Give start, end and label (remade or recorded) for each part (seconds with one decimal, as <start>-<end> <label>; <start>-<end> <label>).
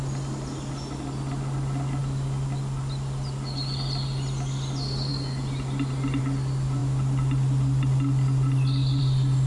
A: 0.0-9.5 recorded